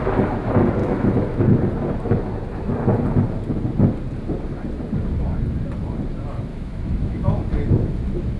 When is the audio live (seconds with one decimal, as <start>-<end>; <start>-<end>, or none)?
0.0-0.8; 1.4-6.5; 7.4-8.4